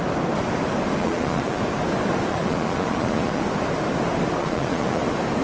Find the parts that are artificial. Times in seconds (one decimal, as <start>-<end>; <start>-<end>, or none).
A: 1.0-1.6; 2.3-3.4; 4.4-5.0